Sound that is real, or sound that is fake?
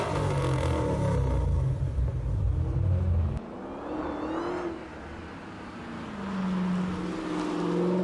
real